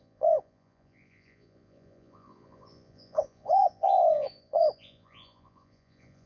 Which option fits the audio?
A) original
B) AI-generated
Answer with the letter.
B